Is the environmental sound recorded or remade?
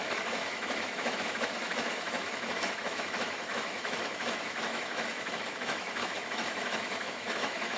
remade